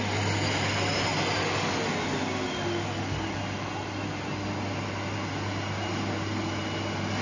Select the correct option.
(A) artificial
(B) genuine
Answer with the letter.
A